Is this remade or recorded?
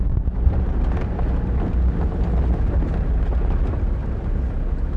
recorded